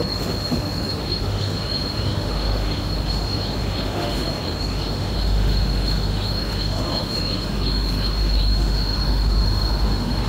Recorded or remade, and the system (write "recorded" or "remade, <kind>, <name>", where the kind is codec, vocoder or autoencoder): remade, autoencoder, DAC-VAE